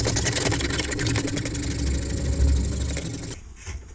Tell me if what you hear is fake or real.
real